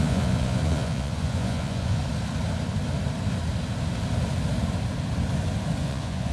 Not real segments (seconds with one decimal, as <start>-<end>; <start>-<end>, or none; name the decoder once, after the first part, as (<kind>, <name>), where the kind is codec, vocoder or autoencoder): 0.0-2.0 (vocoder, Vocos); 5.8-6.3